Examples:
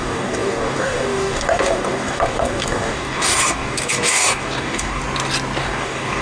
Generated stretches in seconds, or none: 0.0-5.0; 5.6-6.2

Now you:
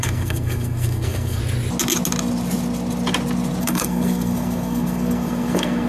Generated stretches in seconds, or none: 0.0-1.4; 3.6-5.9

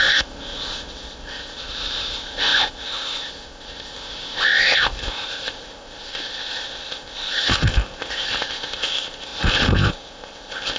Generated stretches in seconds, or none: 0.0-10.8

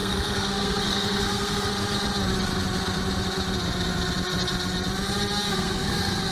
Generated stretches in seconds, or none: 0.0-1.7; 5.5-6.3

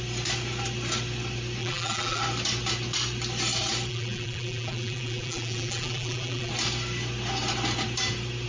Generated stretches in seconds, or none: 1.6-2.2; 3.9-6.5